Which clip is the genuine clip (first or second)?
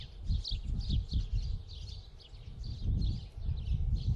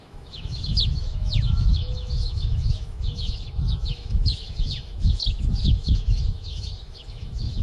first